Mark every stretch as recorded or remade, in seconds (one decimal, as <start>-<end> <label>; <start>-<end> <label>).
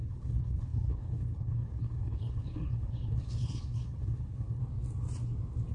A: 0.0-4.6 remade; 4.6-5.7 recorded